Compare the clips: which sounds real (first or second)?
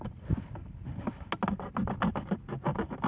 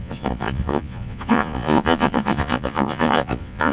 first